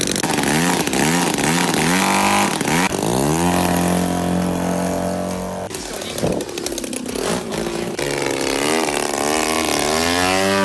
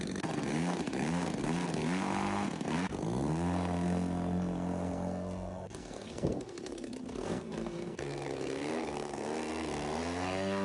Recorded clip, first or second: first